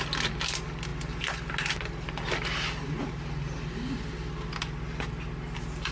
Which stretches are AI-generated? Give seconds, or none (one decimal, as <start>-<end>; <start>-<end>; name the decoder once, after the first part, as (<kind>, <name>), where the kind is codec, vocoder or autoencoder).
none